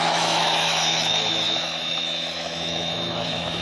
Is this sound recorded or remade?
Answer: remade